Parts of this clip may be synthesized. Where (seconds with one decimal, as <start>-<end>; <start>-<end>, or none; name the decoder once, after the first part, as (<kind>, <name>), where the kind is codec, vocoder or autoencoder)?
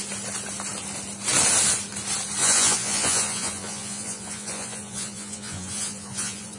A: 2.4-6.6 (vocoder, Vocos)